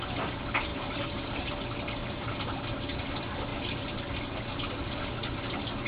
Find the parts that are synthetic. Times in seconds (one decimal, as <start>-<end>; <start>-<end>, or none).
0.7-1.5; 2.0-2.6; 3.5-4.0